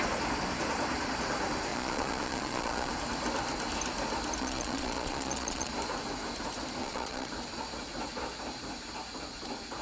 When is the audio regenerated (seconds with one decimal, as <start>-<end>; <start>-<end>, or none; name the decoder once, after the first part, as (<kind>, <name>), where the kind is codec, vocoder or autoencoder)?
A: 1.7-2.9 (vocoder, Vocos); 4.4-5.7; 6.8-7.3